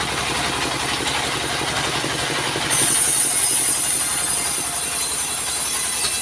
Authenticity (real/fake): real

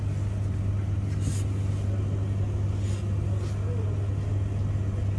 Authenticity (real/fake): real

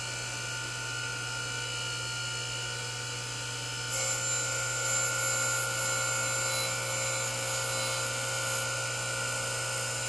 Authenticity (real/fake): real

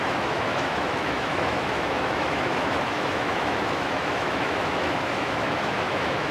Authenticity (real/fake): fake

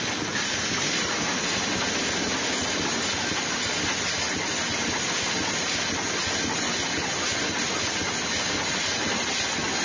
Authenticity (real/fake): real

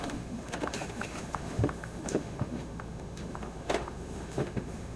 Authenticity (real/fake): fake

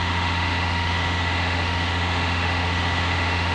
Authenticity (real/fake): fake